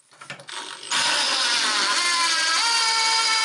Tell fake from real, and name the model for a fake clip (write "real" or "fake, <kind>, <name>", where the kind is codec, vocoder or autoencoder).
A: real